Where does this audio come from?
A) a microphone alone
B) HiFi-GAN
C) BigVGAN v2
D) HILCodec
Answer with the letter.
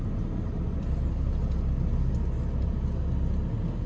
A